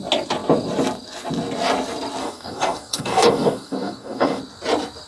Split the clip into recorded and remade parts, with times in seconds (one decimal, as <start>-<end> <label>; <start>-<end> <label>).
0.0-2.2 recorded; 2.2-4.4 remade; 4.4-5.1 recorded